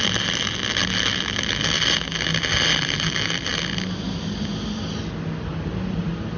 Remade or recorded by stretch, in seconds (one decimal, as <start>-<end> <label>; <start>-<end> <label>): 0.0-6.4 recorded